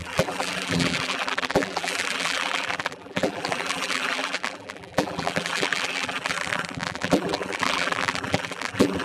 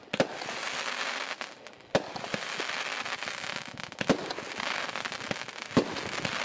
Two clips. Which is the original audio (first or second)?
second